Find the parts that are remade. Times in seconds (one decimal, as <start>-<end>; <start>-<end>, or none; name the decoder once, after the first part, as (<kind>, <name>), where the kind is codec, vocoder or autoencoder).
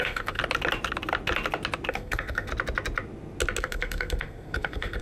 0.0-0.4 (codec, SNAC); 1.9-2.5; 3.6-5.0